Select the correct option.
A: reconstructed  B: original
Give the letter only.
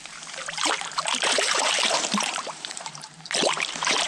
A